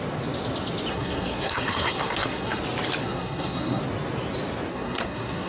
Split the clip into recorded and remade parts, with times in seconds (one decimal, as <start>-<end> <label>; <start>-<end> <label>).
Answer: 0.0-0.9 recorded; 0.9-2.6 remade; 2.6-3.0 recorded; 3.0-3.8 remade; 3.8-4.7 recorded; 4.7-5.5 remade